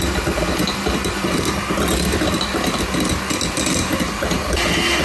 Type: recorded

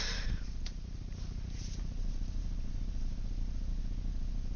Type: remade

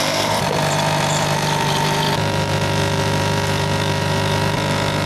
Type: remade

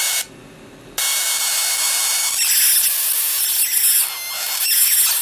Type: recorded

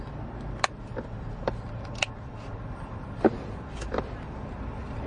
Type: remade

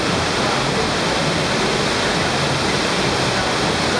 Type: recorded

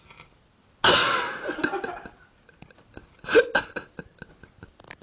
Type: recorded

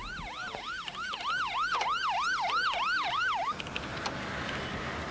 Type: recorded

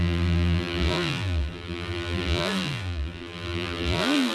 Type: remade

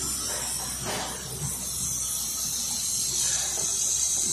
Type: recorded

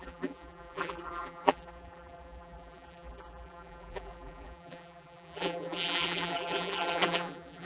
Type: remade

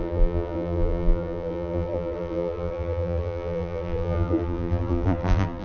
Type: remade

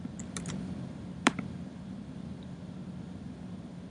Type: remade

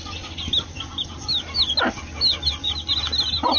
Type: recorded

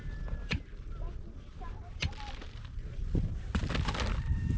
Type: recorded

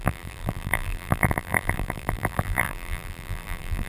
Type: remade